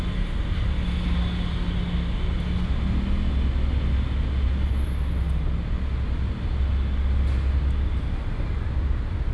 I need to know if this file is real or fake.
real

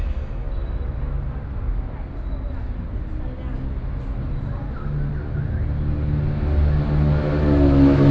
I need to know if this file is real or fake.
real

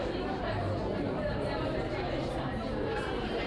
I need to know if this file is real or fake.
fake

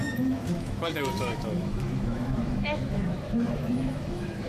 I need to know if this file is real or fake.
fake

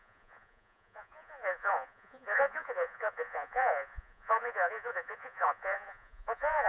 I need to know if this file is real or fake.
fake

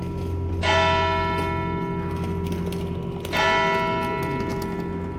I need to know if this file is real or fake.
real